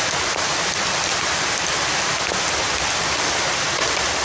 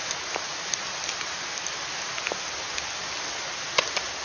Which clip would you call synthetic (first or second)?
first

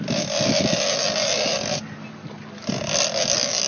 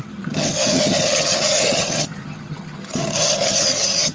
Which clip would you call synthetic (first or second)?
second